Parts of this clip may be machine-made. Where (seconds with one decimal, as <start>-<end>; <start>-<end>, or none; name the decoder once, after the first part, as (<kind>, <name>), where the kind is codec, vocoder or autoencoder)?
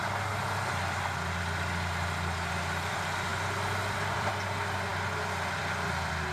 3.3-4.3 (vocoder, BigVGAN v2); 4.9-5.6